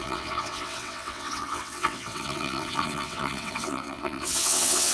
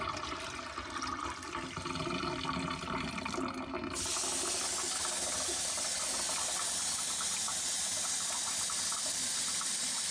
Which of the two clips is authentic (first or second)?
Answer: second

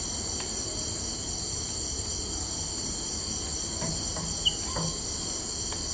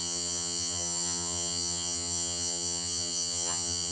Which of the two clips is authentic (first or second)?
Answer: first